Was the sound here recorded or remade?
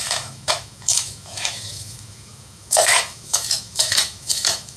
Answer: remade